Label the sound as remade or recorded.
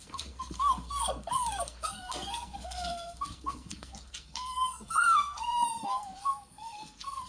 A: remade